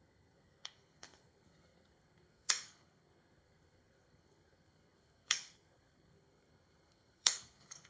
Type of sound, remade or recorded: remade